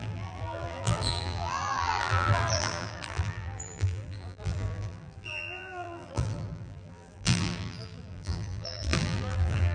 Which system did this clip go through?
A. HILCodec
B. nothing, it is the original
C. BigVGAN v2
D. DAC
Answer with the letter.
C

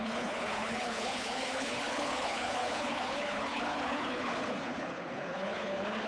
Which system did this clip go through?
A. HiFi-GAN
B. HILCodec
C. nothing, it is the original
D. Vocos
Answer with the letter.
B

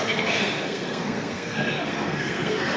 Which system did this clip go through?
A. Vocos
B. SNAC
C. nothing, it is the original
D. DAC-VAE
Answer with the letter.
B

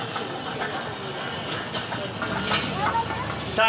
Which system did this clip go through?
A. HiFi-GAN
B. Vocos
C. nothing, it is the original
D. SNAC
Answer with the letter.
C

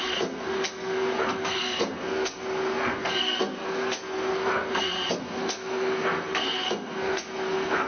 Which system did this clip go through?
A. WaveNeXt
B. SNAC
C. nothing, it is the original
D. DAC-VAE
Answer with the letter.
B